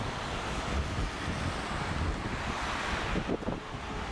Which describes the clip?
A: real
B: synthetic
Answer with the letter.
A